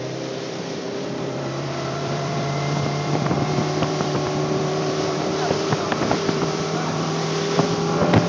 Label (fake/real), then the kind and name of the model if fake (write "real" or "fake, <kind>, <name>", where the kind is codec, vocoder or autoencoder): fake, vocoder, BigVGAN v2